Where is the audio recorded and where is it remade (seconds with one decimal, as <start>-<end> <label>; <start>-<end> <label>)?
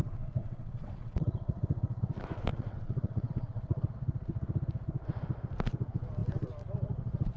0.0-0.4 recorded; 0.4-2.0 remade; 2.0-2.5 recorded; 2.5-3.9 remade; 3.9-7.4 recorded